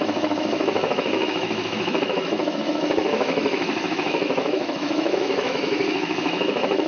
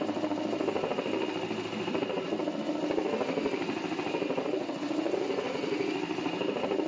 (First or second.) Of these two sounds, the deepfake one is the first